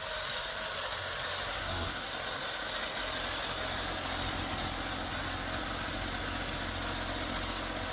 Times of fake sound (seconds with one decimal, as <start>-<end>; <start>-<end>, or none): 1.5-2.1